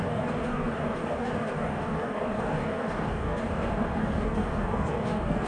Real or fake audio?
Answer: fake